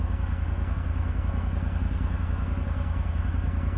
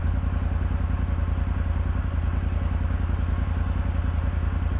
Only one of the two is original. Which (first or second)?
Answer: second